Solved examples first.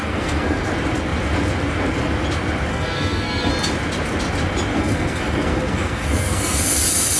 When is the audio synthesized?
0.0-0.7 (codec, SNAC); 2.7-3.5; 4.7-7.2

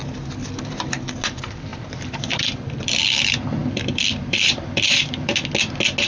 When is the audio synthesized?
0.0-0.9 (vocoder, BigVGAN v2); 1.7-2.9; 3.6-5.3

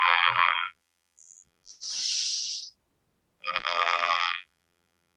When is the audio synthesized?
0.0-1.7 (vocoder, BigVGAN v2); 3.4-5.2

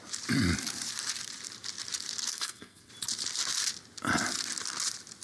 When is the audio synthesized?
2.3-2.9 (codec, SNAC)

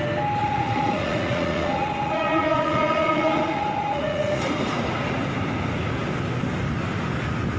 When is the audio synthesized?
0.4-4.4 (vocoder, Vocos)

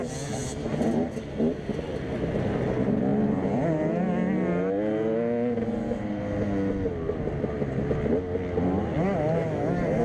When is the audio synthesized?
none

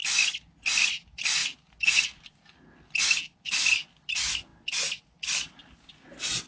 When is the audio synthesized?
none